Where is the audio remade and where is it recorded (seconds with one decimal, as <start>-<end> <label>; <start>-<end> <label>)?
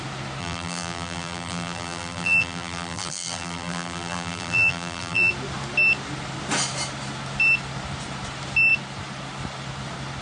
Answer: 0.0-0.4 recorded; 0.4-5.3 remade; 5.3-10.2 recorded